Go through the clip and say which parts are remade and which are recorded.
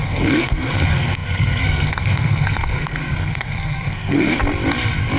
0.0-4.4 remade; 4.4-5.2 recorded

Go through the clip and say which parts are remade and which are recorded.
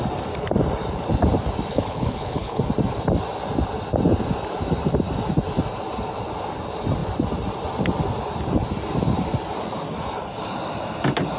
0.0-1.7 recorded; 1.7-2.6 remade; 2.6-11.4 recorded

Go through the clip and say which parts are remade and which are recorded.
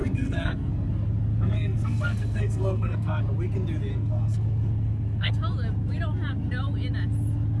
0.0-0.9 remade; 0.9-1.3 recorded; 1.3-3.2 remade; 3.2-3.9 recorded; 3.9-5.3 remade; 5.3-7.6 recorded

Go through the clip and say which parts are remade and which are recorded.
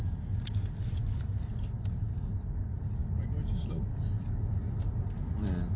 0.0-1.0 recorded; 1.0-1.6 remade; 1.6-5.8 recorded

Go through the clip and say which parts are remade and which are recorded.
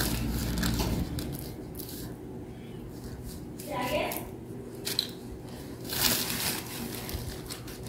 0.0-7.9 recorded